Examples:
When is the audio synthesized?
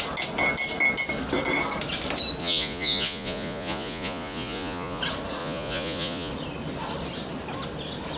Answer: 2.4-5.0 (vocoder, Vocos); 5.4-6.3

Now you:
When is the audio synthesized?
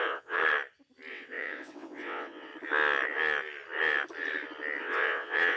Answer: 0.0-0.4 (vocoder, WaveNeXt); 1.1-2.5; 4.8-5.6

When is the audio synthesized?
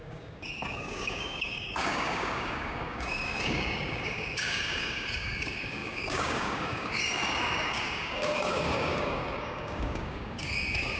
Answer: 0.0-11.0 (codec, DAC)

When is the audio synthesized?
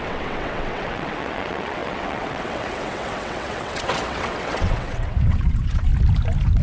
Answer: 0.0-5.9 (vocoder, WaveNeXt)